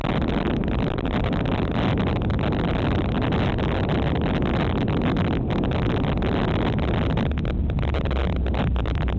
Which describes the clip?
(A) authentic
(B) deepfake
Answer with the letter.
A